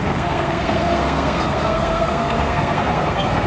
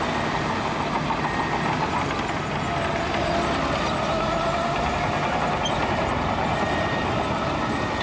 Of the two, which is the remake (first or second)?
first